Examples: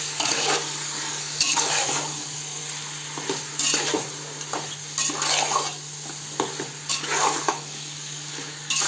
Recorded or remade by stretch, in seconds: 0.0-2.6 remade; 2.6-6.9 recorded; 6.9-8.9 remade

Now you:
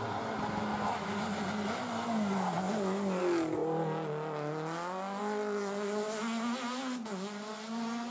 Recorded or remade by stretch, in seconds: 0.0-8.1 recorded

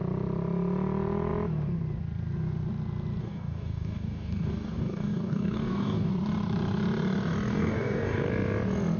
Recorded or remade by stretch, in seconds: 0.0-3.2 recorded; 3.2-6.1 remade; 6.1-7.5 recorded; 7.5-8.3 remade; 8.3-9.0 recorded

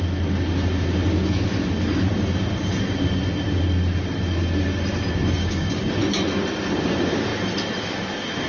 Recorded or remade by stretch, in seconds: 0.0-5.4 recorded; 5.4-5.9 remade; 5.9-8.5 recorded

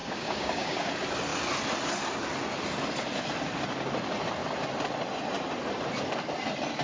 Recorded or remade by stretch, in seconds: 0.0-0.9 remade; 0.9-6.8 recorded

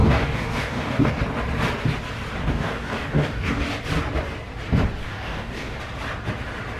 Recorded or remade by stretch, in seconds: 0.0-1.2 remade; 1.2-2.4 recorded; 2.4-3.6 remade; 3.6-5.0 recorded; 5.0-5.8 remade; 5.8-6.8 recorded